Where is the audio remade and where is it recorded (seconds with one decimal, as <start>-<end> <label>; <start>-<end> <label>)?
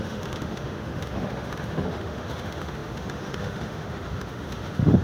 0.0-5.0 remade